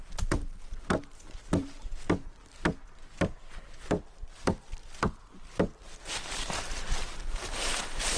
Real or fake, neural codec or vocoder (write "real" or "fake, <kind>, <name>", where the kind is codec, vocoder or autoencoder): fake, vocoder, BigVGAN v2